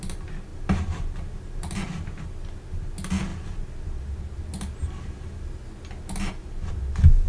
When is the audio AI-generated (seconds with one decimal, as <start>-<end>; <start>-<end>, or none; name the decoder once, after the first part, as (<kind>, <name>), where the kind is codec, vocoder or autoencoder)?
none

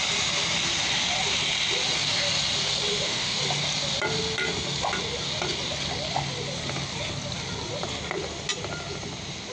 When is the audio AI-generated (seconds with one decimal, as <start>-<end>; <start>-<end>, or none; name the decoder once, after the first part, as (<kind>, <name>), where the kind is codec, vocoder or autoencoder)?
2.9-3.4 (autoencoder, DAC-VAE)